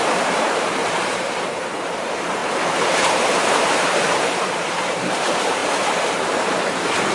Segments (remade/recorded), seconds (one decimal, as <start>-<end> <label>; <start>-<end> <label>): 0.0-5.6 remade; 5.6-6.4 recorded; 6.4-7.1 remade